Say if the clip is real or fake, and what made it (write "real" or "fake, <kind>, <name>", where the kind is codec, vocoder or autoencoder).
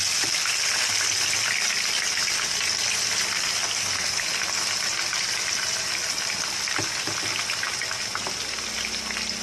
real